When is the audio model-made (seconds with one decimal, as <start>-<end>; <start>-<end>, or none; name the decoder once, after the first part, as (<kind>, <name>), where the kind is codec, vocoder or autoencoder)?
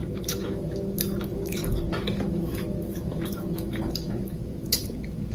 0.0-1.6 (autoencoder, DAC-VAE); 2.3-5.3